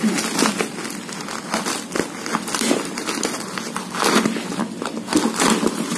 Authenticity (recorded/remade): recorded